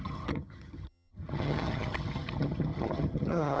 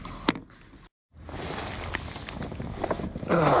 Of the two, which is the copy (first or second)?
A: first